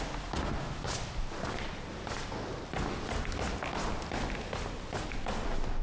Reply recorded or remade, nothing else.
recorded